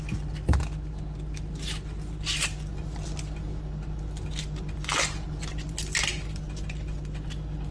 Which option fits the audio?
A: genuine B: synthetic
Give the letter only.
A